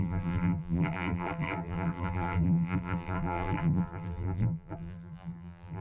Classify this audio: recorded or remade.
remade